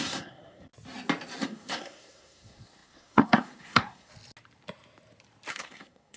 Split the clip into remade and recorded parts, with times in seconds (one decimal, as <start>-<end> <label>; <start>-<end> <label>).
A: 0.0-0.7 remade; 0.7-1.4 recorded; 1.4-4.1 remade; 4.1-5.5 recorded; 5.5-6.2 remade